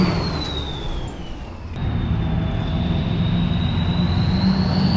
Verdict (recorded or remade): recorded